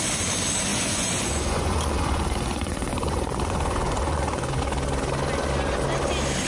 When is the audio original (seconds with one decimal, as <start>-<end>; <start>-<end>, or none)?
0.0-0.7; 4.6-6.5